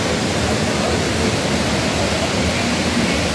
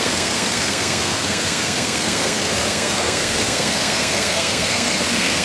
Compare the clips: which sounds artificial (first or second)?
second